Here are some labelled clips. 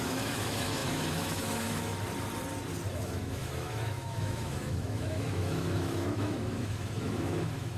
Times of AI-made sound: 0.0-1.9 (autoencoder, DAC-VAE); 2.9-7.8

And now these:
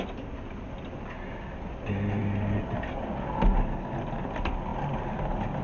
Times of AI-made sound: none

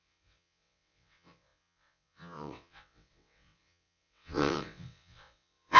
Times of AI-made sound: 0.0-5.8 (vocoder, WaveNeXt)

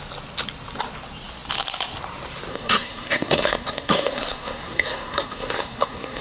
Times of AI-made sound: 2.5-6.2 (codec, SNAC)

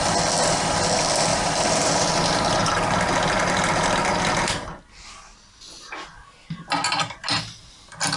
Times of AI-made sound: 1.3-2.1 (vocoder, BigVGAN v2)

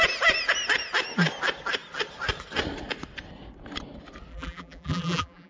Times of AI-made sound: 4.3-5.5 (vocoder, BigVGAN v2)